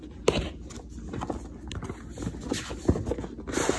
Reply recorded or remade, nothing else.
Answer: recorded